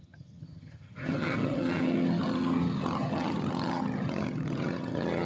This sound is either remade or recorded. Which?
remade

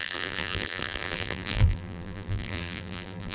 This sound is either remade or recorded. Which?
remade